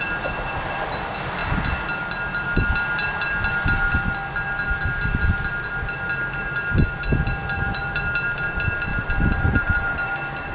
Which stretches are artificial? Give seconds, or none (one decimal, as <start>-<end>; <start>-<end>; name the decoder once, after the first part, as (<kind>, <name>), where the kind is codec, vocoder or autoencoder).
7.4-8.0 (vocoder, BigVGAN v2); 8.9-10.1